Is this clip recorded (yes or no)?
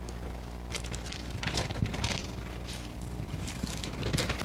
no